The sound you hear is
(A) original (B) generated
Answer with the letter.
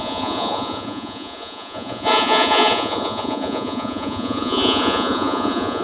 B